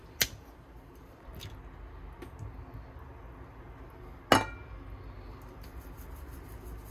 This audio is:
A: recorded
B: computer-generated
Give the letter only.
A